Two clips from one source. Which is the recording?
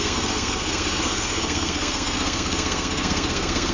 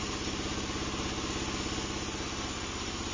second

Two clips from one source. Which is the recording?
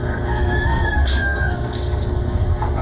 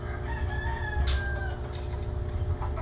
second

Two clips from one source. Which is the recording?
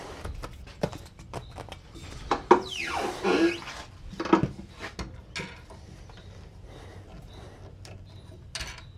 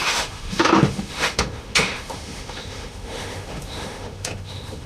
first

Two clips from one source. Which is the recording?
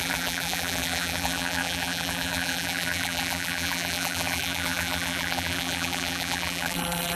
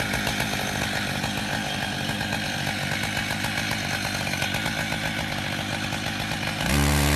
second